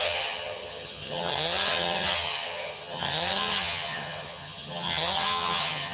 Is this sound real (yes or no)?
no